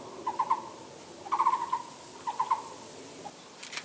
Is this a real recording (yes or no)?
yes